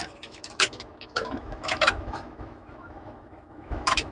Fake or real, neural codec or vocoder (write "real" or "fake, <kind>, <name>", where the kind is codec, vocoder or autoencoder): fake, autoencoder, DAC-VAE